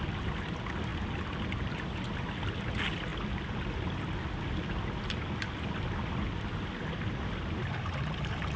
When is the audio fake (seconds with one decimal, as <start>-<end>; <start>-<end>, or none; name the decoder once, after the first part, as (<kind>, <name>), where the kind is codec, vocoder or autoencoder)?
none